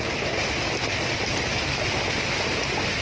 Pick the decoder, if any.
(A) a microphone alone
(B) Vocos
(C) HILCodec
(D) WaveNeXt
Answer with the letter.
A